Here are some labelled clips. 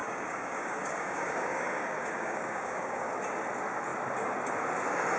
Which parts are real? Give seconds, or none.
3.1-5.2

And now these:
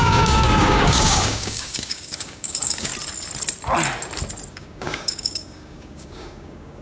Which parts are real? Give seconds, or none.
2.9-4.5